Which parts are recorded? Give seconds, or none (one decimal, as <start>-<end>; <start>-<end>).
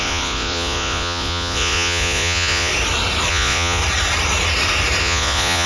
2.7-3.3; 3.8-5.0